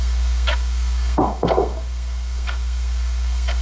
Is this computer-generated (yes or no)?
yes